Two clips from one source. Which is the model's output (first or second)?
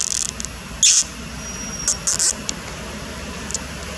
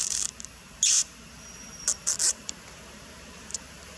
second